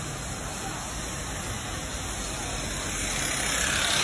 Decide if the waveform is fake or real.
real